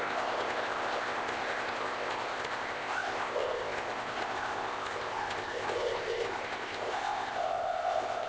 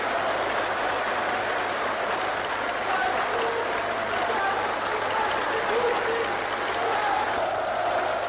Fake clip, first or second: first